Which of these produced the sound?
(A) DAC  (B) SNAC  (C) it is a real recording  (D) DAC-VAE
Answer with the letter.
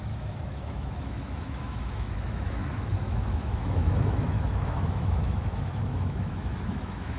D